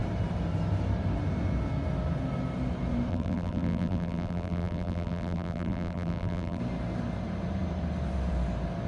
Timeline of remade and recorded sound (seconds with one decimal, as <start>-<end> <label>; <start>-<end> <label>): 0.0-3.1 recorded; 3.1-6.6 remade; 6.6-8.9 recorded